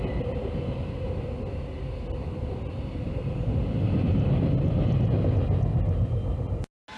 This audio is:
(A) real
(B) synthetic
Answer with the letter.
A